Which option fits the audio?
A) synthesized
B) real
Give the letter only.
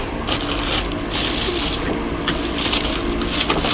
B